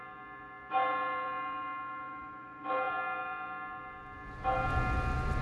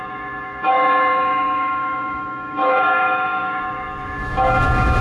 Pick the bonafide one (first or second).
first